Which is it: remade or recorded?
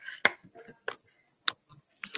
recorded